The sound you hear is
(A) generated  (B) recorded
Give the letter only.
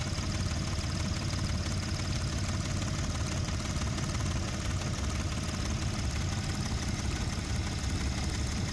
B